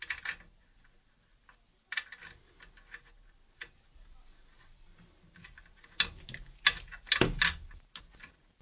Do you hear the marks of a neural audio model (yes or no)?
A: no